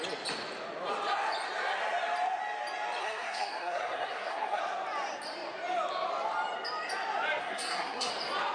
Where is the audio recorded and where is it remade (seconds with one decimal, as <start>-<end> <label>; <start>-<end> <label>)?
0.0-3.0 recorded; 3.0-4.6 remade; 4.6-7.4 recorded; 7.4-8.1 remade; 8.1-8.5 recorded